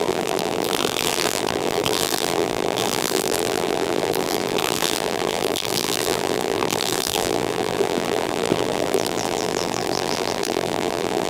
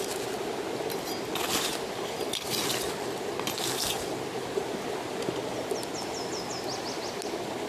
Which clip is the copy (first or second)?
first